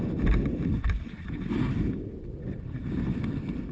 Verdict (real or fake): real